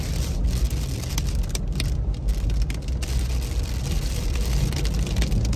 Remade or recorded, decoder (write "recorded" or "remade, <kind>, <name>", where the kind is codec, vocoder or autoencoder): recorded